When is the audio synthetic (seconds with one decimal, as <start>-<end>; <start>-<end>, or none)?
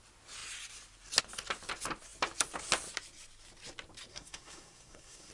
4.1-5.3